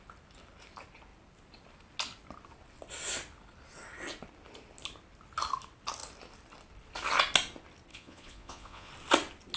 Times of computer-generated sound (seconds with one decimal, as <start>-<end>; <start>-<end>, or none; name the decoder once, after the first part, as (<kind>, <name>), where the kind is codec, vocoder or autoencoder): 7.9-8.9 (vocoder, Vocos)

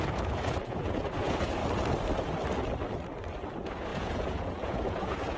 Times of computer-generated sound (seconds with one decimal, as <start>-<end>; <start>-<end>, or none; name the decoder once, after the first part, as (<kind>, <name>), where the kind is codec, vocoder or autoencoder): 0.0-1.6 (vocoder, Vocos); 3.5-5.4

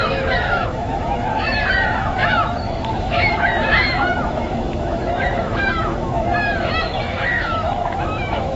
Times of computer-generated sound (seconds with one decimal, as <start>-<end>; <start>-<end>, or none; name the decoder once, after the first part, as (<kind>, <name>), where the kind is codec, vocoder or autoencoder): 0.0-8.6 (autoencoder, DAC-VAE)

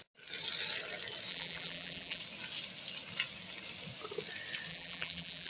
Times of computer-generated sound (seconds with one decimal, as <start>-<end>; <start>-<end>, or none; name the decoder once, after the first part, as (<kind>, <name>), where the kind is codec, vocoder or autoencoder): 1.3-2.2 (vocoder, BigVGAN v2); 4.7-5.5

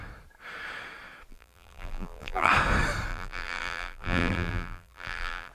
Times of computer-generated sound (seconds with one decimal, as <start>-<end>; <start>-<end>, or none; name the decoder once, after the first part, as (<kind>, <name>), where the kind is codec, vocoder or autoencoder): 1.3-2.5 (vocoder, BigVGAN v2); 3.1-5.5

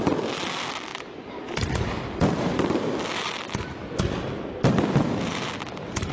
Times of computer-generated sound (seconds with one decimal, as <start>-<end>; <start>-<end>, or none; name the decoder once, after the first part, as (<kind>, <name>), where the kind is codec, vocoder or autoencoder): 0.9-3.1 (vocoder, BigVGAN v2)

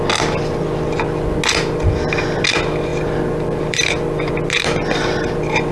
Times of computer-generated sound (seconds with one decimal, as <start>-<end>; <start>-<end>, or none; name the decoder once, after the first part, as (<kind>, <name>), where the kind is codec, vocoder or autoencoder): 2.9-4.3 (vocoder, BigVGAN v2)

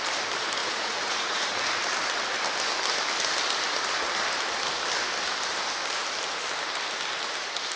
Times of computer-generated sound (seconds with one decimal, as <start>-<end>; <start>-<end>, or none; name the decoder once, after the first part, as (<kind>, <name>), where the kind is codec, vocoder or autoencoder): 0.6-1.5 (vocoder, Vocos)